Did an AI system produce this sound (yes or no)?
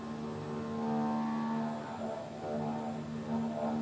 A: no